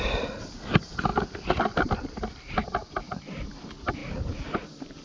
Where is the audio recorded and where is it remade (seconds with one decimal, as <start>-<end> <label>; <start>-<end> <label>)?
0.0-5.0 recorded